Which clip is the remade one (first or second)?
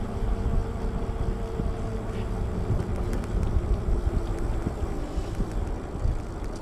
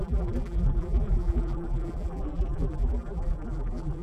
second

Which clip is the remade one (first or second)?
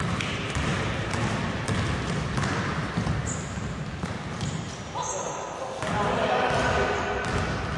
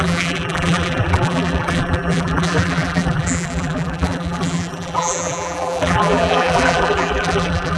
second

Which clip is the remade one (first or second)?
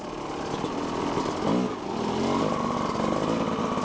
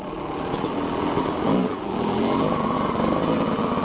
second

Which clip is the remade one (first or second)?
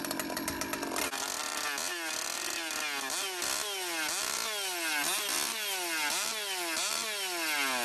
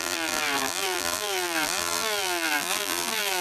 second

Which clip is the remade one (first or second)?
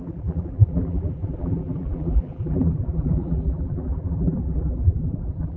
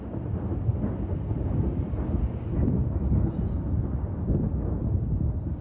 first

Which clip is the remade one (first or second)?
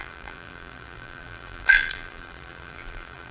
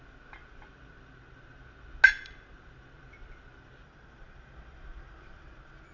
first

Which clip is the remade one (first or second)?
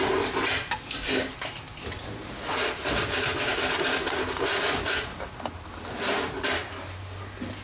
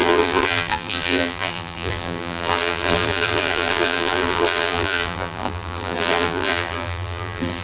second